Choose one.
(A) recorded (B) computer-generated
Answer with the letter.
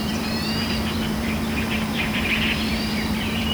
B